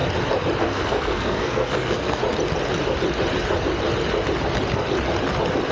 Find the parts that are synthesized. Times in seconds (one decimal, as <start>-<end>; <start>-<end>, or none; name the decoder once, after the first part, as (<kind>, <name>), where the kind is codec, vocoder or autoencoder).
0.6-2.2 (codec, SNAC)